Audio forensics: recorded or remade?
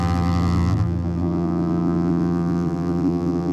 remade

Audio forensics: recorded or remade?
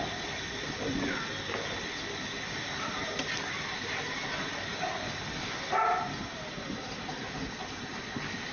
recorded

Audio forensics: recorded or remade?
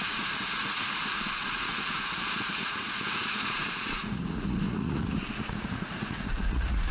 remade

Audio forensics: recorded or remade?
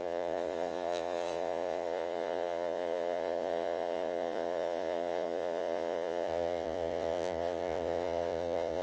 remade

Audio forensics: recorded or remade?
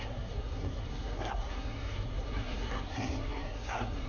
remade